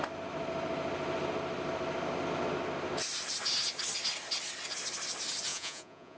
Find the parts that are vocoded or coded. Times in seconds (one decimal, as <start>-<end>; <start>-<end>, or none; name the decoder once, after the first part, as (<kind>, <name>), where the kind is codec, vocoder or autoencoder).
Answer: 5.5-6.2 (vocoder, Vocos)